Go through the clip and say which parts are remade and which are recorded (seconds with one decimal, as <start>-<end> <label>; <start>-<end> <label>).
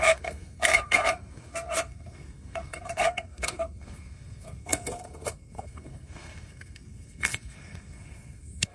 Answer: 0.0-8.7 remade